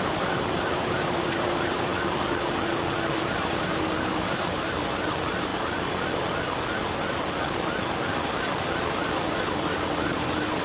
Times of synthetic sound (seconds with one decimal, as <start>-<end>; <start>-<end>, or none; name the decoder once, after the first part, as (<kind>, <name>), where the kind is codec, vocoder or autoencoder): 0.0-1.9 (vocoder, BigVGAN v2); 3.2-5.5; 8.9-10.6